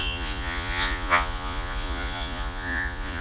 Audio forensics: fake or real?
fake